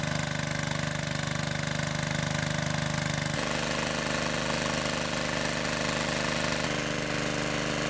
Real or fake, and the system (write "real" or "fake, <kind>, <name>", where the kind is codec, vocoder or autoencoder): real